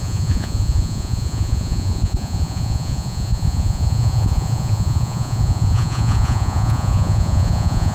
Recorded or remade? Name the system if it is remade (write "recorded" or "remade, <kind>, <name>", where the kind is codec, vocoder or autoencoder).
remade, vocoder, Vocos